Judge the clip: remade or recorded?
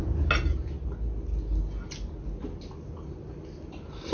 recorded